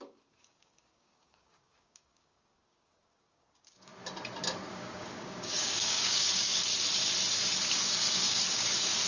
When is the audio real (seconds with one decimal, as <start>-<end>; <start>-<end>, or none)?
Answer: 3.9-4.7; 6.7-7.8